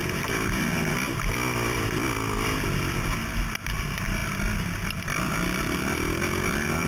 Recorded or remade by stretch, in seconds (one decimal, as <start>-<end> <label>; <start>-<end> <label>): 0.0-6.9 recorded